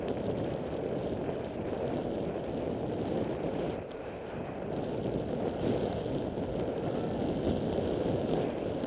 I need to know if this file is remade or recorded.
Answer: recorded